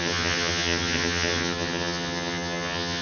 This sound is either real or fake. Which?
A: fake